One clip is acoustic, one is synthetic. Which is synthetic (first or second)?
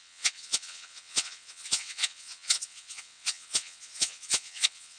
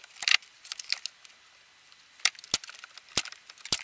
first